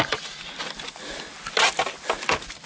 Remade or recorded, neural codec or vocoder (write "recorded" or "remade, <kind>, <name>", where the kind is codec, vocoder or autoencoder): recorded